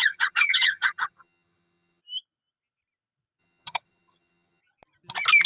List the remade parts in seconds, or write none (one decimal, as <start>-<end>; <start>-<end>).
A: 0.0-2.0; 3.4-4.6